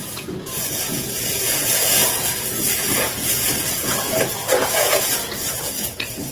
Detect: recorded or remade remade